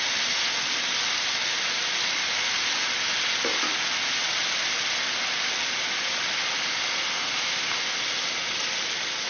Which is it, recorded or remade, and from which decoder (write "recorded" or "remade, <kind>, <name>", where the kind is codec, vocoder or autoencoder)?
recorded